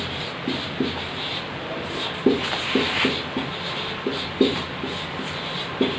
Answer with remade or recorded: recorded